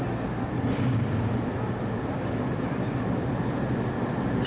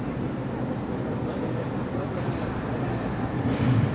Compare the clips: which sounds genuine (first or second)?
first